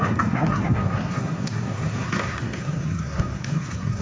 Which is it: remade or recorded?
remade